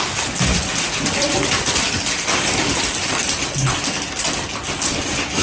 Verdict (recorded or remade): recorded